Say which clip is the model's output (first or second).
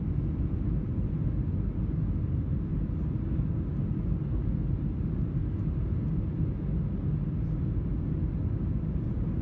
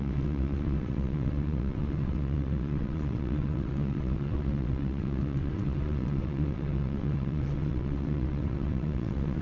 second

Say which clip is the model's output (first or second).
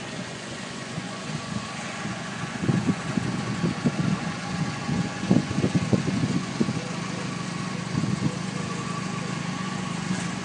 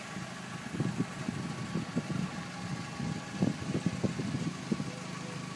first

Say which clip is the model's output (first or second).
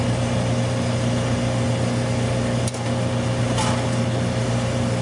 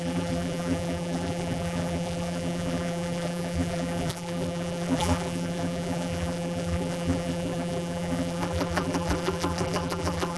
second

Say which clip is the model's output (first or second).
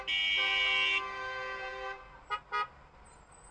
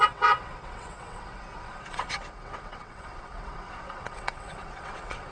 second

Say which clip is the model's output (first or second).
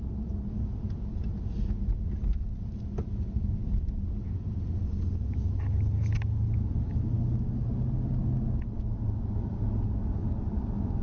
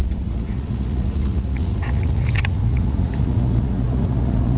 second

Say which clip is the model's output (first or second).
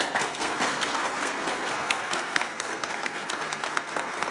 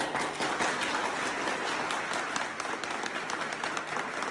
first